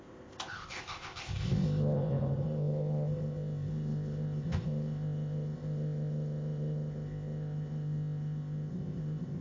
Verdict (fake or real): fake